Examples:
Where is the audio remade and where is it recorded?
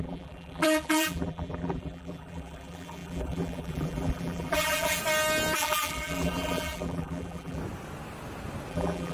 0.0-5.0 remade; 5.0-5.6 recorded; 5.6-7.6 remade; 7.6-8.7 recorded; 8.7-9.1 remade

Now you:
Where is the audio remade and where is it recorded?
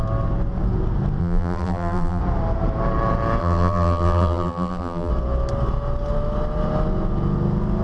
0.0-1.2 recorded; 1.2-2.2 remade; 2.2-3.4 recorded; 3.4-5.1 remade; 5.1-7.8 recorded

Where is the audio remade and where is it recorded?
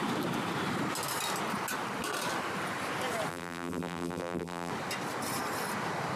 0.0-3.3 recorded; 3.3-4.7 remade; 4.7-6.2 recorded